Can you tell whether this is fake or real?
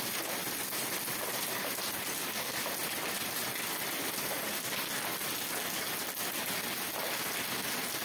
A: real